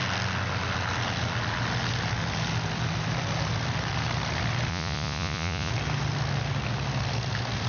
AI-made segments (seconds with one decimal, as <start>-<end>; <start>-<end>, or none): 4.7-5.7